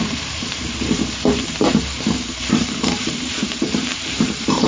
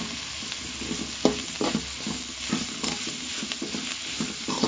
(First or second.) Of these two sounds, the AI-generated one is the first